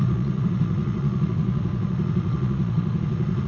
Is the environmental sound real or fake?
fake